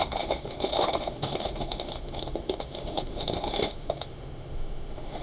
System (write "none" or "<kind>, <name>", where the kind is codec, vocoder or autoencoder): autoencoder, DAC-VAE